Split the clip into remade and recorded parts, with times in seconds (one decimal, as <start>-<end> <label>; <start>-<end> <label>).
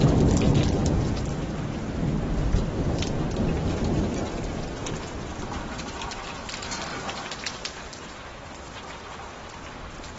0.0-1.3 recorded; 1.3-2.3 remade; 2.3-5.3 recorded; 5.3-6.1 remade; 6.1-6.9 recorded; 6.9-8.1 remade; 8.1-10.2 recorded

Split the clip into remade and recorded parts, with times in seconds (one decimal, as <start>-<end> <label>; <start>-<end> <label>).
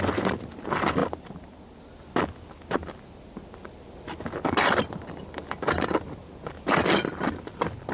0.0-7.9 recorded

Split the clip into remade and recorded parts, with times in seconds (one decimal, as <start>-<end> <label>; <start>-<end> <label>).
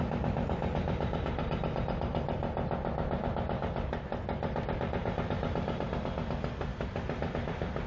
0.0-7.9 recorded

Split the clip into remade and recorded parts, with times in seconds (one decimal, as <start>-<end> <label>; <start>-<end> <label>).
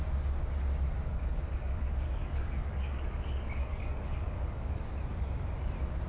0.0-1.1 recorded; 1.1-4.8 remade; 4.8-6.1 recorded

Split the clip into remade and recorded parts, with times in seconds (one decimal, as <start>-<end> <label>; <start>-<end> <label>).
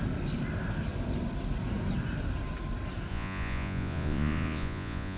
0.0-3.1 recorded; 3.1-5.2 remade